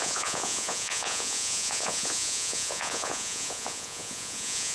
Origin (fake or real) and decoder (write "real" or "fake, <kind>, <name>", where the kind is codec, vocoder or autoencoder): fake, vocoder, Vocos